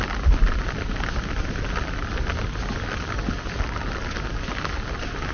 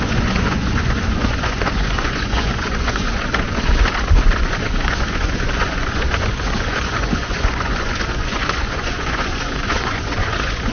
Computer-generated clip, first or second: second